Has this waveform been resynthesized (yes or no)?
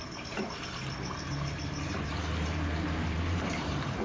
yes